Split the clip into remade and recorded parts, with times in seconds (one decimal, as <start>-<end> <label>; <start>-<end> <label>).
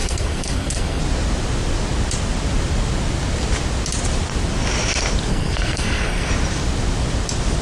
0.0-1.0 remade; 1.0-5.3 recorded; 5.3-6.3 remade; 6.3-7.6 recorded